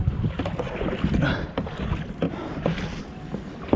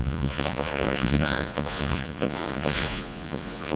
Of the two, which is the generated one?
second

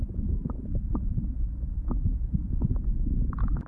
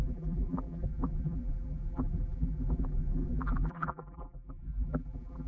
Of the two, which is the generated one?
second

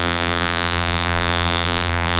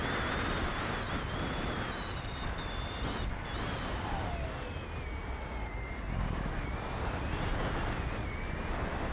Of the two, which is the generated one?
first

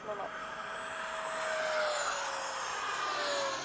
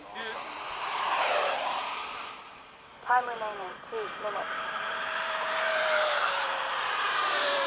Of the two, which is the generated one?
second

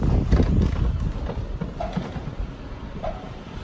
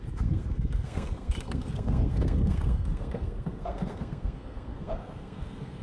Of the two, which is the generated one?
second